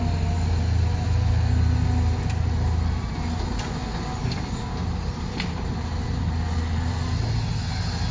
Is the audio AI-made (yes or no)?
no